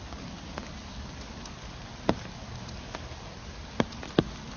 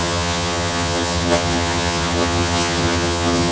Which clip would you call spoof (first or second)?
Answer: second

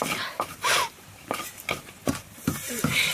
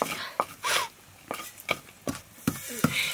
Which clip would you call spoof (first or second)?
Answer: first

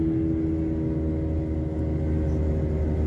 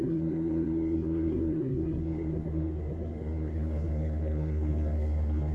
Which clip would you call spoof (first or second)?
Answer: second